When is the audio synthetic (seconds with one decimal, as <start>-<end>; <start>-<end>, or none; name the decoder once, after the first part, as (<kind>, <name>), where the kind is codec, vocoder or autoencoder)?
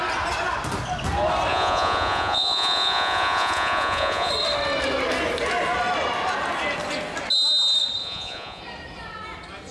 1.5-4.3 (vocoder, Vocos); 8.0-8.6